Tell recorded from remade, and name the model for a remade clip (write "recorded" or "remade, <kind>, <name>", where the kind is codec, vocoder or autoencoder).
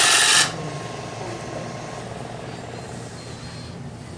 recorded